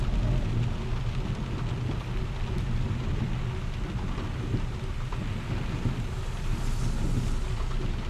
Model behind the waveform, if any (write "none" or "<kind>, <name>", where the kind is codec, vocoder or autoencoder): none